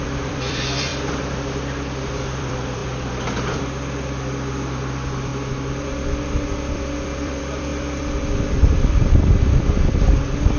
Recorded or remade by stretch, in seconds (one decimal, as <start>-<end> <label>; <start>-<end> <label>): 0.0-5.3 remade; 5.3-7.0 recorded; 7.0-10.6 remade

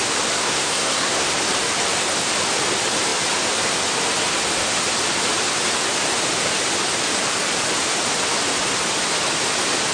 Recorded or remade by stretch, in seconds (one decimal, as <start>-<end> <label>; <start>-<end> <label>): 0.0-0.4 recorded; 0.4-1.3 remade; 1.3-9.9 recorded